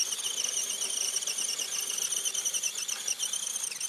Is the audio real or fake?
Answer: real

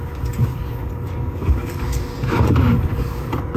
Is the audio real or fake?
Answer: fake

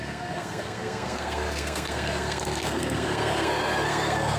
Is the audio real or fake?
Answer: fake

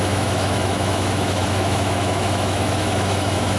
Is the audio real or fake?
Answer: fake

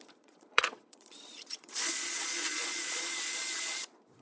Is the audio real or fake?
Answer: fake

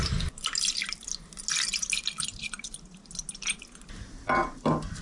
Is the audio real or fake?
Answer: real